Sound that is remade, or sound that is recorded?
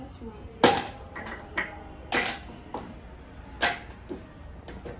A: recorded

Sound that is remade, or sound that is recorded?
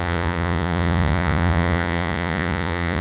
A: remade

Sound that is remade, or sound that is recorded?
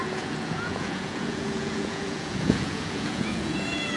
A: remade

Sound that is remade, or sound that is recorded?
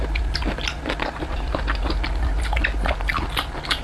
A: recorded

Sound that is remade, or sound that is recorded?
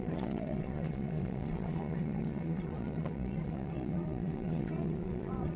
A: remade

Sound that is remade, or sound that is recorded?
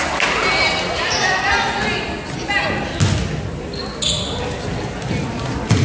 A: recorded